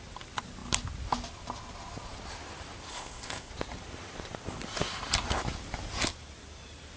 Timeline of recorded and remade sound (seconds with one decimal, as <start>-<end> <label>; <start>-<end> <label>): 0.0-2.9 recorded; 2.9-3.5 remade; 3.5-7.0 recorded